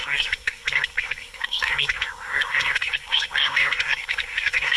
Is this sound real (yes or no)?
no